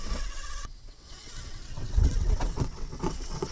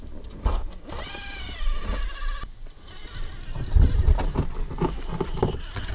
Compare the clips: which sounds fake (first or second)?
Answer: first